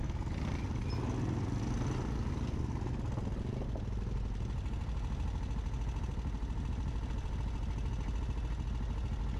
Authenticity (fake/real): real